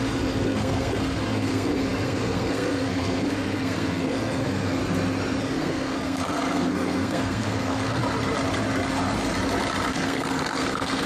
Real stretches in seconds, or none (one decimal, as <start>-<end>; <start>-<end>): 4.8-5.4; 8.0-9.9